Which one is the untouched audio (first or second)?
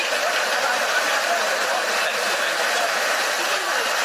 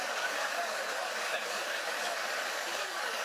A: first